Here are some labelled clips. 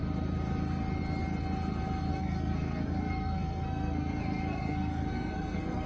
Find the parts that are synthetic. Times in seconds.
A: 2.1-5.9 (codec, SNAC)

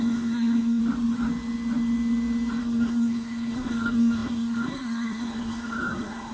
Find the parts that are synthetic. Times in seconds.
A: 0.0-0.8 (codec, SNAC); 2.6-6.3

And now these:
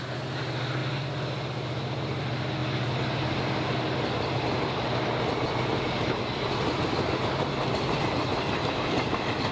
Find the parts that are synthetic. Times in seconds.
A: none

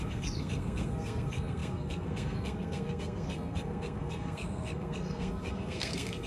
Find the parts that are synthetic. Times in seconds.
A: 0.0-6.3 (codec, SNAC)

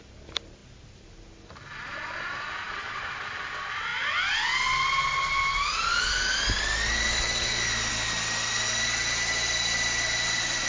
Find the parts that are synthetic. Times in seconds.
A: none